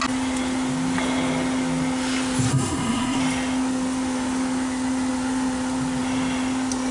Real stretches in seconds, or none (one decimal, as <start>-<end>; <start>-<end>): 0.0-2.5; 3.2-6.9